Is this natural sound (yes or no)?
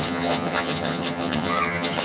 no